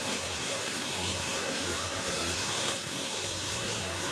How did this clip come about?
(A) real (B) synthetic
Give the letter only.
B